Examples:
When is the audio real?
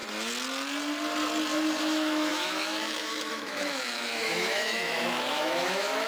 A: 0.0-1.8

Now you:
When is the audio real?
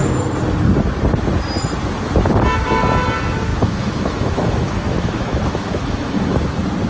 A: 0.0-3.5; 6.4-6.9